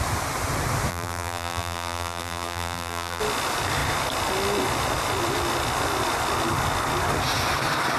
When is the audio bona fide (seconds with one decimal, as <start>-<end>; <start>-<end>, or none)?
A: 0.0-0.9; 3.2-8.0